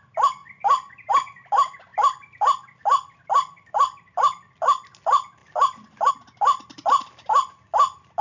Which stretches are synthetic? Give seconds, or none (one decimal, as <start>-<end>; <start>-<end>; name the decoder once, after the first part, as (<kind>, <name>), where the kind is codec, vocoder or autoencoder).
0.4-1.1 (vocoder, BigVGAN v2); 5.4-6.1